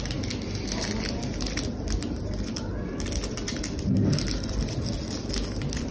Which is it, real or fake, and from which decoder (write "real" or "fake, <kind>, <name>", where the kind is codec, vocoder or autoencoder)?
real